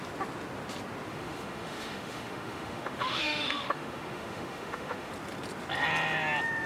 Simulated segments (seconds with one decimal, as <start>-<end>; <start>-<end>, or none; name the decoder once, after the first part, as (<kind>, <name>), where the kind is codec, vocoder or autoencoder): 1.1-5.1 (autoencoder, DAC-VAE)